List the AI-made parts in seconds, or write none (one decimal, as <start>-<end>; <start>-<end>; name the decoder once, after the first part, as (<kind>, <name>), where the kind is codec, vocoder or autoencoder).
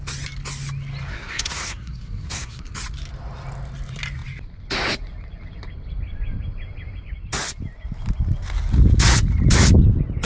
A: 1.1-2.7 (codec, SNAC)